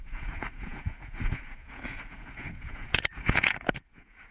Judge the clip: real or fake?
fake